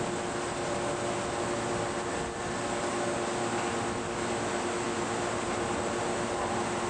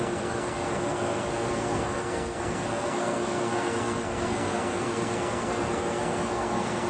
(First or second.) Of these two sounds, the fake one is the second